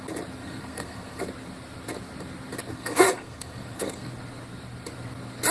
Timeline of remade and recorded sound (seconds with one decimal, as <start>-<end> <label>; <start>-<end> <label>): 0.0-0.4 recorded; 0.4-1.2 remade; 1.2-2.7 recorded; 2.7-4.1 remade; 4.1-5.5 recorded